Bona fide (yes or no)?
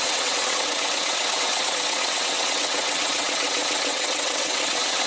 no